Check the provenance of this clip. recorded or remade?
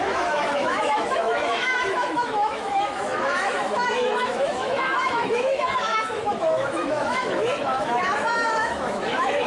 remade